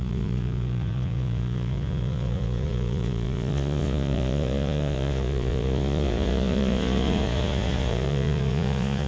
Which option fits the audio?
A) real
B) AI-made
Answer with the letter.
B